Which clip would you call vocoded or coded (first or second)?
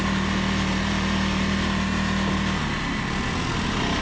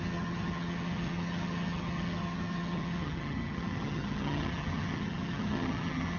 second